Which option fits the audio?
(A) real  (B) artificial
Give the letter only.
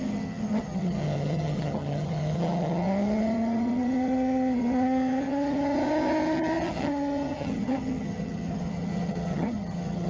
B